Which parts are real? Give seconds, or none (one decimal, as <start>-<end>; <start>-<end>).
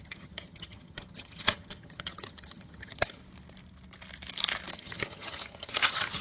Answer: 3.2-4.7